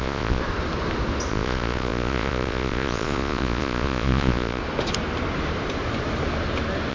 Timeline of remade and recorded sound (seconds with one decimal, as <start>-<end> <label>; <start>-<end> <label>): 0.0-0.4 remade; 0.4-1.3 recorded; 1.3-4.6 remade; 4.6-6.9 recorded

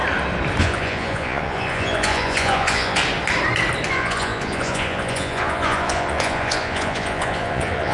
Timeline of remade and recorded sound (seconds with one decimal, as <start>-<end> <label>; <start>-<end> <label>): 0.0-0.6 recorded; 0.6-3.0 remade; 3.0-3.9 recorded; 3.9-7.9 remade

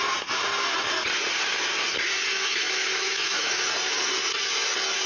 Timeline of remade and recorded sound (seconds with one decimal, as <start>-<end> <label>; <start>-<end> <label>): 0.0-2.3 recorded; 2.3-3.6 remade; 3.6-5.1 recorded

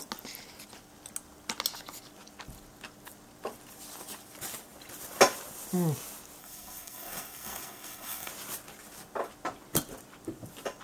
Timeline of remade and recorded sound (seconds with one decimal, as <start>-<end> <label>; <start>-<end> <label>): 0.0-6.4 recorded; 6.4-8.3 remade; 8.3-10.8 recorded

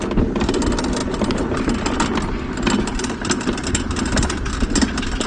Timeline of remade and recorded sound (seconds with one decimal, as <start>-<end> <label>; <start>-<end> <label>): 0.0-5.3 recorded

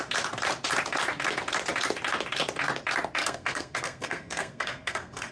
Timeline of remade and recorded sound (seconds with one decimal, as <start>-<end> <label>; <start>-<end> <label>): 0.0-3.2 recorded; 3.2-5.3 remade

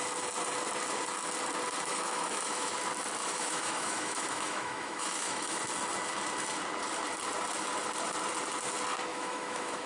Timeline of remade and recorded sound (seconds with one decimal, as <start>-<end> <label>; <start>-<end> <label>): 0.0-1.9 recorded; 1.9-2.7 remade; 2.7-3.2 recorded; 3.2-5.6 remade; 5.6-9.1 recorded; 9.1-9.9 remade

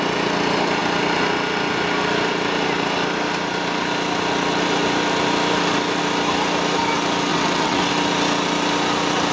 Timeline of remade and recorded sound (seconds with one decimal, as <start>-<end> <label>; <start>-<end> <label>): 0.0-7.3 recorded; 7.3-7.9 remade; 7.9-9.3 recorded